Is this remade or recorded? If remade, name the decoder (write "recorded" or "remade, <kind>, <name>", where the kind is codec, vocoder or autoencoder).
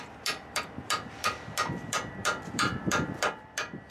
remade, vocoder, BigVGAN v2